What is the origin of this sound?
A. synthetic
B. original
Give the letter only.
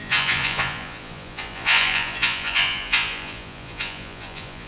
A